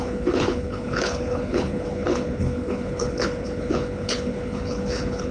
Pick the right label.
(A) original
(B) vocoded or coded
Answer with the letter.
B